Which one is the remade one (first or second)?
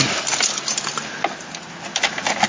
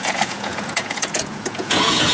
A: second